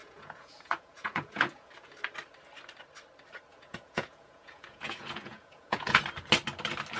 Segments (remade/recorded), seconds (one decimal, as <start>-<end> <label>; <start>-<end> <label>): 0.0-1.7 remade; 1.7-3.5 recorded; 3.5-6.0 remade; 6.0-7.0 recorded